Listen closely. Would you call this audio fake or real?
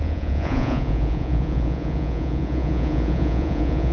fake